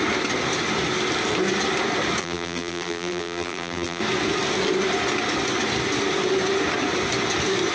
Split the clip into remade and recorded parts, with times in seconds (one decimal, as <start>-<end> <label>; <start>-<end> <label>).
0.0-2.2 recorded; 2.2-4.0 remade; 4.0-7.7 recorded